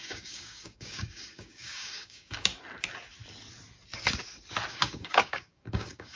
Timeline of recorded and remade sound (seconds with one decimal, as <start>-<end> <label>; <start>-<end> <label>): 0.0-2.5 remade; 2.5-4.7 recorded; 4.7-6.2 remade

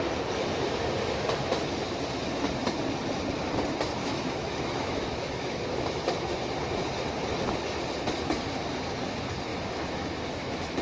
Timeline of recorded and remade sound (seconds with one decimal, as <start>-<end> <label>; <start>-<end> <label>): 0.0-4.0 recorded; 4.0-6.5 remade; 6.5-9.5 recorded; 9.5-10.8 remade